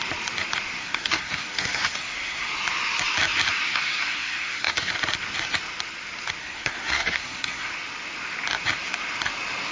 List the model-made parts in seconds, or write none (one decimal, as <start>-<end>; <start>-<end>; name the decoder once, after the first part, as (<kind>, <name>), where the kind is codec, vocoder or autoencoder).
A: 0.8-2.5 (codec, SNAC); 3.7-4.9; 6.4-7.7